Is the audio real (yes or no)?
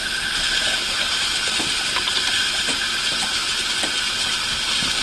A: yes